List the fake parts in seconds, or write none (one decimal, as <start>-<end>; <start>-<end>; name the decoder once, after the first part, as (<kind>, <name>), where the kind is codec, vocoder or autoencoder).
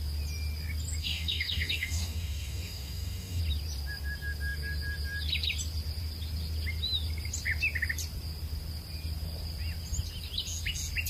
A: 1.0-3.4 (codec, DAC)